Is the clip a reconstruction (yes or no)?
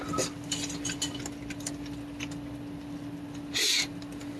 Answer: no